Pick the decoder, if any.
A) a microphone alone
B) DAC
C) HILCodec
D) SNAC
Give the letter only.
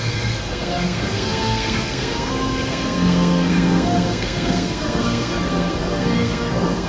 D